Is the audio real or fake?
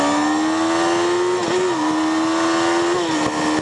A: real